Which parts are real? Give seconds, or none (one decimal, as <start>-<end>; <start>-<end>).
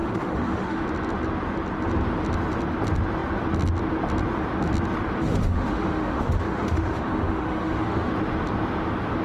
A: 0.8-5.2; 8.1-9.2